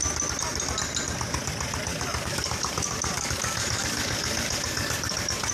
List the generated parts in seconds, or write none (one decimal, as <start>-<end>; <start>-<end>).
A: 1.9-5.5